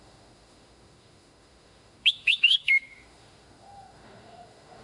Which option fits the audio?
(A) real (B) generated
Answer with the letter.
B